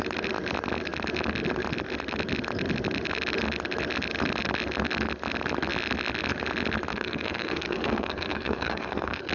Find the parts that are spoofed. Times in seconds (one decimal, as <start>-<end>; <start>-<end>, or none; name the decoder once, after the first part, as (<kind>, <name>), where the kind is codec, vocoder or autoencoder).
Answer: 6.9-9.3 (codec, SNAC)